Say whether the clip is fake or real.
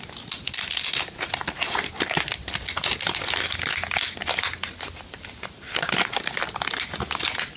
real